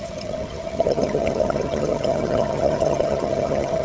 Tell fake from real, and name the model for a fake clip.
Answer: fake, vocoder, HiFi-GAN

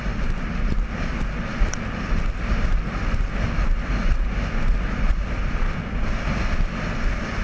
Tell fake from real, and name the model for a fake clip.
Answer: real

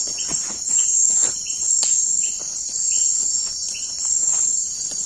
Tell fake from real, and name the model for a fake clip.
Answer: fake, vocoder, Vocos